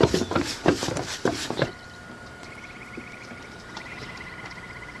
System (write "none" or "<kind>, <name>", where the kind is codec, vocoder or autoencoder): vocoder, BigVGAN v2